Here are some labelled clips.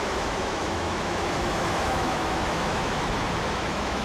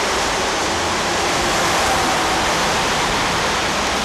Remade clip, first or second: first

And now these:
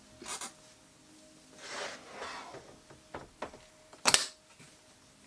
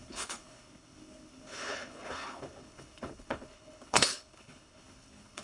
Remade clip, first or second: second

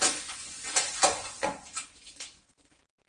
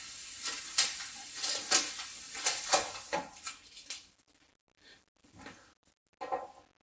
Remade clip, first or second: first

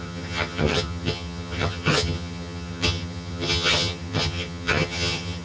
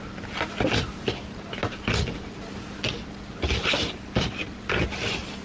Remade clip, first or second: first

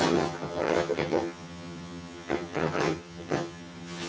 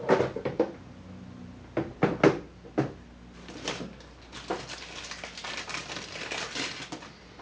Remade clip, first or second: first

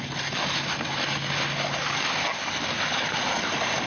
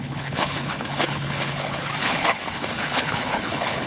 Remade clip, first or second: second